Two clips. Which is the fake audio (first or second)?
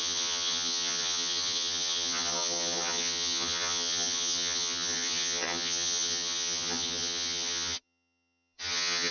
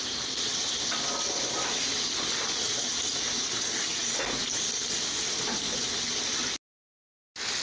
first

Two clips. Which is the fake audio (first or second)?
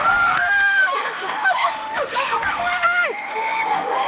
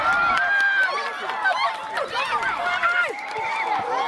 first